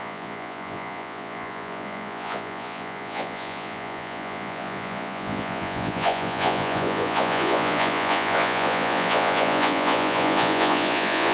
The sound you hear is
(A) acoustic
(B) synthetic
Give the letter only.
B